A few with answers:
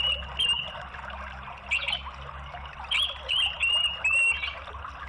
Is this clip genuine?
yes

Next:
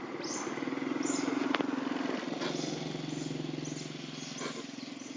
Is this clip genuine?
yes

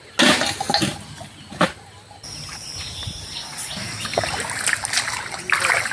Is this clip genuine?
yes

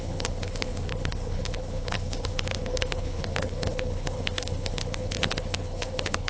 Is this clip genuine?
no